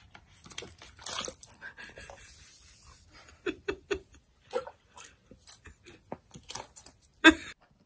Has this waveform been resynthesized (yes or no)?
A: no